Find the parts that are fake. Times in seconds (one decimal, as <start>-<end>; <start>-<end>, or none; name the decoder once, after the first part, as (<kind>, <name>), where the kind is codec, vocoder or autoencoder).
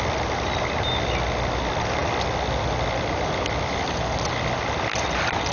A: none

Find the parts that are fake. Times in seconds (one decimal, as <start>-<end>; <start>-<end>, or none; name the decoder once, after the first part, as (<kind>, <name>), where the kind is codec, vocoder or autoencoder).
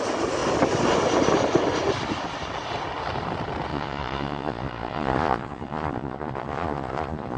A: 3.7-7.4 (vocoder, Vocos)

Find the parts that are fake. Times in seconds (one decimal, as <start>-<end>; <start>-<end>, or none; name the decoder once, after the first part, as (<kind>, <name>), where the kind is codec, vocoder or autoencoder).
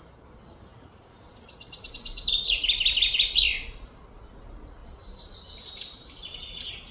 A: 0.7-1.9 (vocoder, BigVGAN v2); 4.8-6.5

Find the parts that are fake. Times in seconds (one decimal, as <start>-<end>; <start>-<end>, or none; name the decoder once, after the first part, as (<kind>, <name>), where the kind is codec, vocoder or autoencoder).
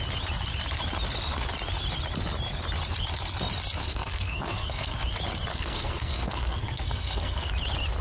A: 3.8-5.0 (codec, SNAC); 5.5-7.5